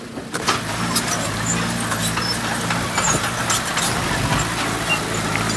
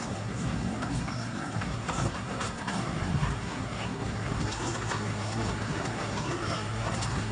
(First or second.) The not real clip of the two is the second